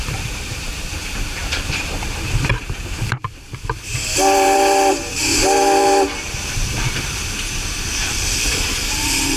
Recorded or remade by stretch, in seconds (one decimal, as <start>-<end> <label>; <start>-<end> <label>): 0.0-9.4 remade